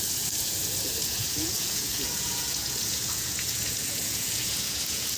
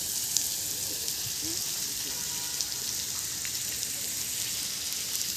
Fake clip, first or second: first